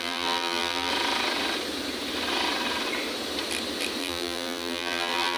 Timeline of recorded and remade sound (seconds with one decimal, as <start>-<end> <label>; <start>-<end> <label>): 0.0-0.9 remade; 0.9-4.0 recorded; 4.0-5.4 remade